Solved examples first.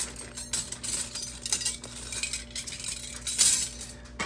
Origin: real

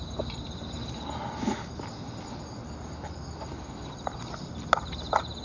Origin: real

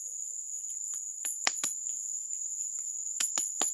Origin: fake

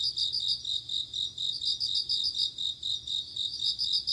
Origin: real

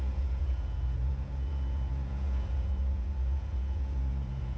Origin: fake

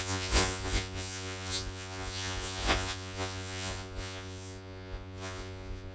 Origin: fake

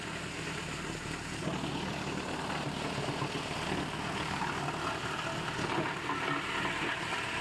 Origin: real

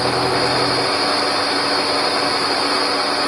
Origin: real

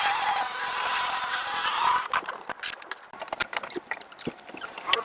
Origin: real